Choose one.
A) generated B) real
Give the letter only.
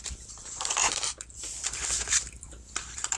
A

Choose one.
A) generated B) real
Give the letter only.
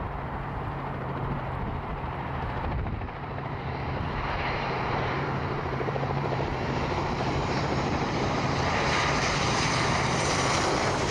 A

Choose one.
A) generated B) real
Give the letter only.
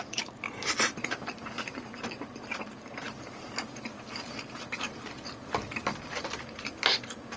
A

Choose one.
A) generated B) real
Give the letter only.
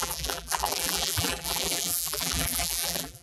A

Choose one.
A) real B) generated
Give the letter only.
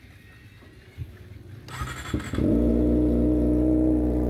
A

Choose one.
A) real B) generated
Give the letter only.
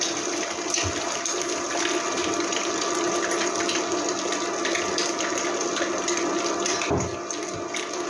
A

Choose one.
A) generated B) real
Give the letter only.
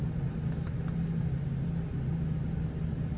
B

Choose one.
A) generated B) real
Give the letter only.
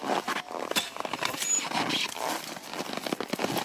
A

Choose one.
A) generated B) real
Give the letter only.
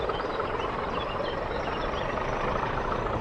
A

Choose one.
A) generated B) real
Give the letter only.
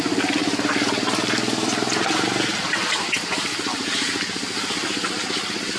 B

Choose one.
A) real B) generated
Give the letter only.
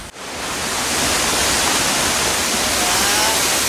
A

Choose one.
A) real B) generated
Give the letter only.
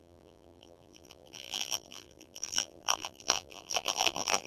B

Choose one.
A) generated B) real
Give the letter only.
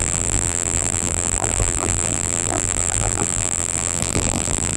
A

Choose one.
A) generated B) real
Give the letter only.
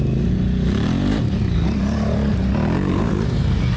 B